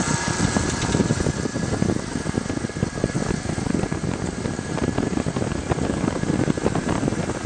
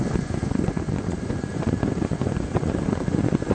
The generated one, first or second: second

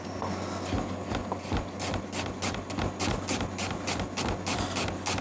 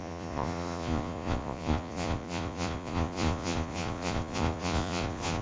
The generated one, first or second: second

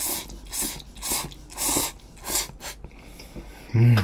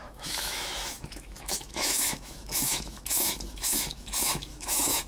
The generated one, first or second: second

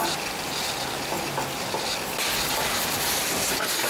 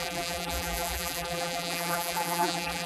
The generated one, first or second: second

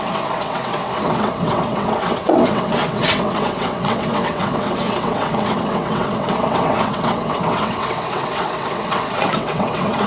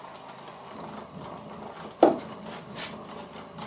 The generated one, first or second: first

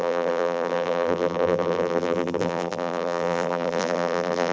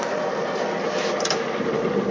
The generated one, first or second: first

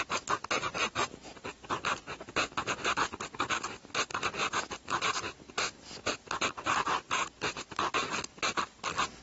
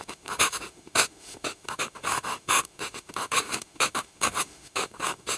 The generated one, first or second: second